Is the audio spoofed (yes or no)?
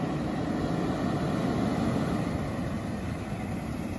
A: no